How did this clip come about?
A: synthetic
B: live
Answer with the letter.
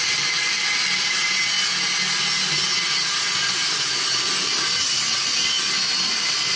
B